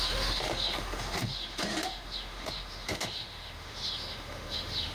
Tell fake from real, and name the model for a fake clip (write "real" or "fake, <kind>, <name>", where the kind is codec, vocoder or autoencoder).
fake, autoencoder, DAC-VAE